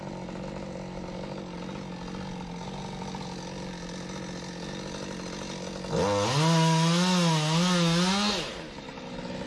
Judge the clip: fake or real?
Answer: real